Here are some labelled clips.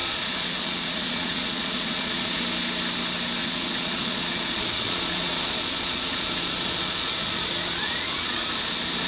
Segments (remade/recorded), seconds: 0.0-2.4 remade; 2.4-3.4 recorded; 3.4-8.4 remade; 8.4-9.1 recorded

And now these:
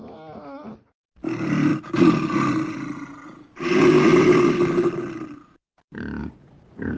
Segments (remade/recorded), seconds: 0.0-6.2 recorded; 6.2-7.0 remade

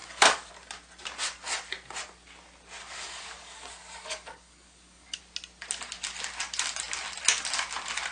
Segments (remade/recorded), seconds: 0.0-0.5 remade; 0.5-2.8 recorded; 2.8-5.2 remade; 5.2-8.1 recorded

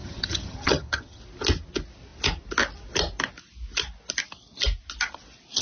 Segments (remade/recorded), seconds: 0.0-1.2 remade; 1.2-5.6 recorded

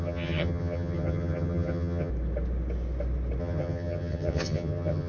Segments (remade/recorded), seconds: 0.0-2.1 remade; 2.1-3.4 recorded; 3.4-5.1 remade